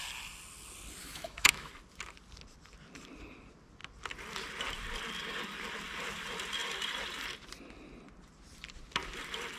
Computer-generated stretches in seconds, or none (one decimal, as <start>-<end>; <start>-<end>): 1.0-1.7